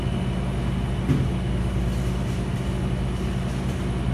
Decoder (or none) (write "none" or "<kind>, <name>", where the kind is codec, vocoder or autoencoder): none